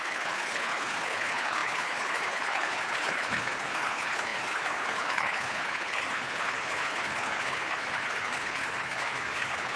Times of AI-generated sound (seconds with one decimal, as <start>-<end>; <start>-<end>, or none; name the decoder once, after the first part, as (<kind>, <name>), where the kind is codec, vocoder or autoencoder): 0.0-9.8 (codec, HILCodec)